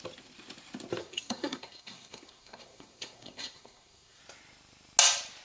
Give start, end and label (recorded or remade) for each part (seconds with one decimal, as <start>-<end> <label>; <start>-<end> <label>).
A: 0.0-1.0 recorded; 1.0-4.2 remade; 4.2-5.4 recorded